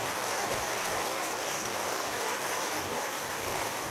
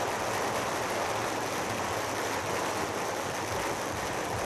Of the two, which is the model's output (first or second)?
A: first